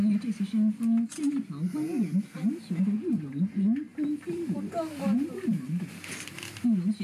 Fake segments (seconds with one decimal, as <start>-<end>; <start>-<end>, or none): 2.3-3.5; 3.9-7.0